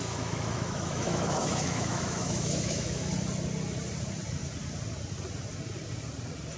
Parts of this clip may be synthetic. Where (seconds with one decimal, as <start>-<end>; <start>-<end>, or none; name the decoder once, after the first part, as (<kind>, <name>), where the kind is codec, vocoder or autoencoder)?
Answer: 0.0-3.1 (autoencoder, DAC-VAE)